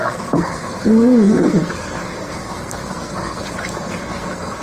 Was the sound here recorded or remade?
remade